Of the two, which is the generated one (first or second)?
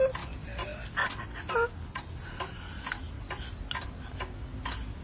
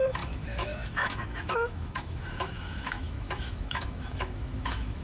second